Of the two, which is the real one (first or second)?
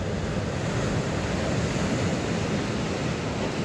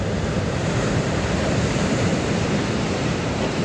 first